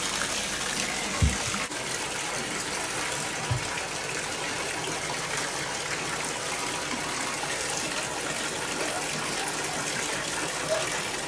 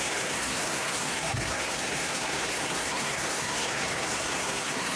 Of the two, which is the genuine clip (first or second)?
first